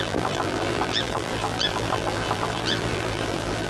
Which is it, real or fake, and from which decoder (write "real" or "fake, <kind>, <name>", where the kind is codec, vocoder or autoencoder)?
fake, vocoder, BigVGAN v2